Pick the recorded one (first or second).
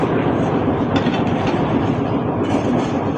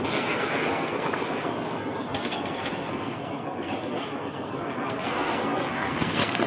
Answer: first